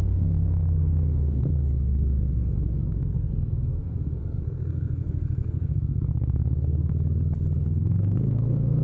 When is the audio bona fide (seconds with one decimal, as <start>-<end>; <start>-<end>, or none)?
6.9-7.6